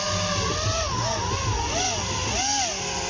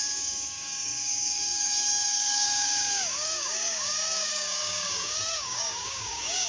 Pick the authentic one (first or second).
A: first